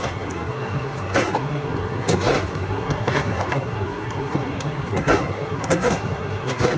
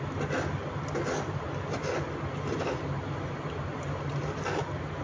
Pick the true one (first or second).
second